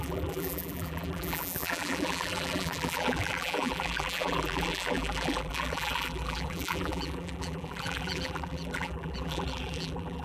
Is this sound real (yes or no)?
no